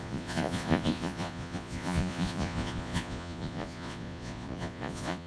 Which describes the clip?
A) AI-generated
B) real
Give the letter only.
A